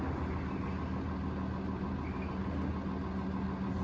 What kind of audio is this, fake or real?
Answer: real